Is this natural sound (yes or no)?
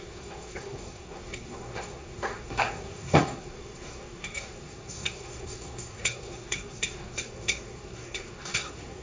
no